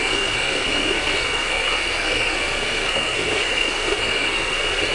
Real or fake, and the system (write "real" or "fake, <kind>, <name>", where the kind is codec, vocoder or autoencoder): fake, codec, SNAC